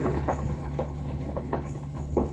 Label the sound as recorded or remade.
remade